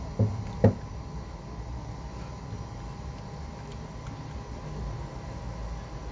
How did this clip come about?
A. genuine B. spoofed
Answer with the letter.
A